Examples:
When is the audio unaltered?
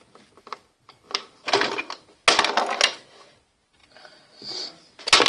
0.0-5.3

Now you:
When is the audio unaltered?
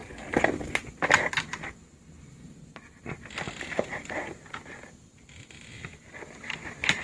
0.0-7.0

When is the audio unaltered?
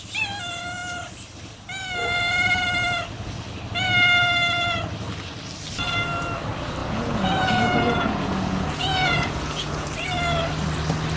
0.0-6.8; 9.9-11.2